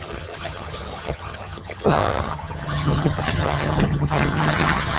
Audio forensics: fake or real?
fake